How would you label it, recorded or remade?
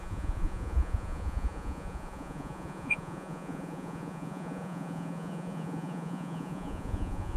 remade